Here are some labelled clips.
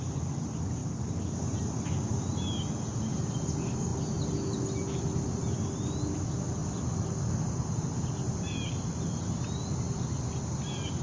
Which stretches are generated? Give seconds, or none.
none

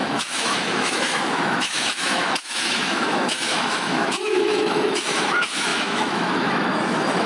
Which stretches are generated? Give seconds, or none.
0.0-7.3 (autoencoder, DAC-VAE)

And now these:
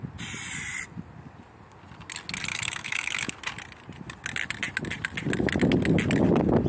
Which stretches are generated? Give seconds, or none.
2.5-3.3 (autoencoder, DAC-VAE)

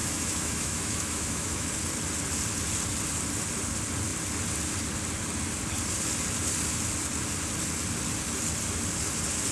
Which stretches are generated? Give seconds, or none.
0.0-1.7 (autoencoder, DAC-VAE)

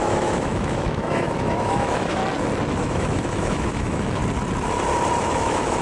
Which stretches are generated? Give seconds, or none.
0.0-2.2 (autoencoder, DAC-VAE); 2.8-4.2; 5.3-5.8

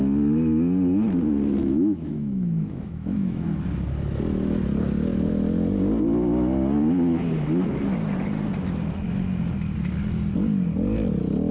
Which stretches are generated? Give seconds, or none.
1.6-3.6 (autoencoder, DAC-VAE)